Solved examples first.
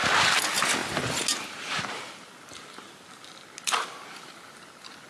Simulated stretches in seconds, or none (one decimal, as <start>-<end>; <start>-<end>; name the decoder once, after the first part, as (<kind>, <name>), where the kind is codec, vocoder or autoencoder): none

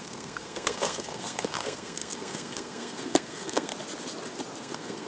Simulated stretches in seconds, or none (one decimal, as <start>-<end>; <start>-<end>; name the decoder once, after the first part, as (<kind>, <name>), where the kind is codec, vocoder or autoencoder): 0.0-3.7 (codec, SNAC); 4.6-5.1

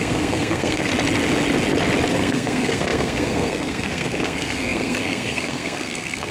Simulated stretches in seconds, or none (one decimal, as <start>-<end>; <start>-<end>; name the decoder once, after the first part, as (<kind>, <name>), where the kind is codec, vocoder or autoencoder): 0.0-0.9 (codec, SNAC); 2.1-6.3

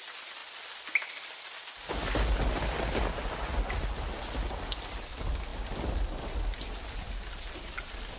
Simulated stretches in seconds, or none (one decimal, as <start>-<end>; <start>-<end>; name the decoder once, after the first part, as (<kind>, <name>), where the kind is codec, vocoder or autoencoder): none